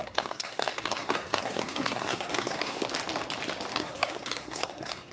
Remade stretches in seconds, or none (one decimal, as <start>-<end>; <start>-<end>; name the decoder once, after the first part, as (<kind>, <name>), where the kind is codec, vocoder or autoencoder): 0.0-2.8 (codec, SNAC); 3.7-5.1